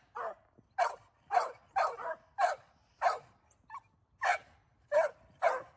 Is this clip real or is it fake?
real